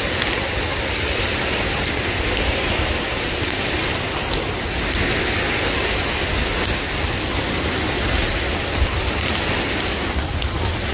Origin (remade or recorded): recorded